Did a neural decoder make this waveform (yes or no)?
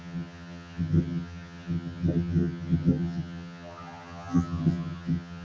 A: yes